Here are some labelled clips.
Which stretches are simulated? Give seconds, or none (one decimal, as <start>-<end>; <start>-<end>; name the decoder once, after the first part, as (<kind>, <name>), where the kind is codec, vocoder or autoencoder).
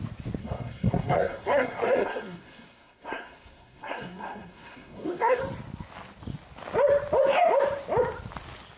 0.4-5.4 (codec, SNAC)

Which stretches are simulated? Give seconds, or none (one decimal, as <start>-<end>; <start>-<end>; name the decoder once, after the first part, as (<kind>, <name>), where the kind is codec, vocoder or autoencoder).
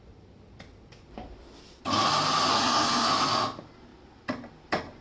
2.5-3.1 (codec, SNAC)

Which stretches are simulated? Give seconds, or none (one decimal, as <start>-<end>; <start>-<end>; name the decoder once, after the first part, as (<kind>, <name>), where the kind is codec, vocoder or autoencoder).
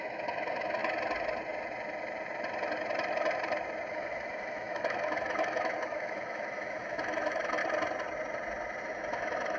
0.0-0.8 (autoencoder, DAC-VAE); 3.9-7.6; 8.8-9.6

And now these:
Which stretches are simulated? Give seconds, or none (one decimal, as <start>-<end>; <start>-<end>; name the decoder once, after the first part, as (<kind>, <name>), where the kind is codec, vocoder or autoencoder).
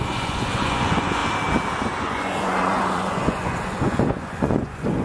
0.0-1.2 (vocoder, Vocos); 2.0-5.0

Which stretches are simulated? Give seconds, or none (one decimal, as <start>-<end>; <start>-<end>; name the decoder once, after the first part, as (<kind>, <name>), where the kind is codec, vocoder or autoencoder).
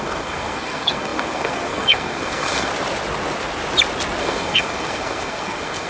0.0-2.7 (codec, SNAC); 4.2-5.9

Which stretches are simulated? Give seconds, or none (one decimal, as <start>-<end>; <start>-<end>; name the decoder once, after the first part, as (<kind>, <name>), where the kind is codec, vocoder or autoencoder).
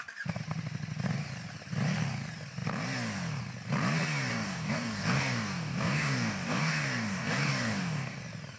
4.3-8.2 (codec, DAC)